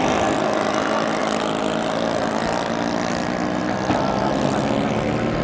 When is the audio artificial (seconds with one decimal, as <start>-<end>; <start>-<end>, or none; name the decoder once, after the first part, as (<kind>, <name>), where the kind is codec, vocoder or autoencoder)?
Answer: 3.6-4.2 (vocoder, BigVGAN v2)